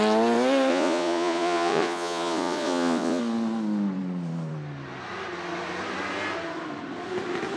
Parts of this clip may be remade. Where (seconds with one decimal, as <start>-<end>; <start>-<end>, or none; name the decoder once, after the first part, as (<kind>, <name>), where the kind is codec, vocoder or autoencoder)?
0.7-3.2 (vocoder, Vocos)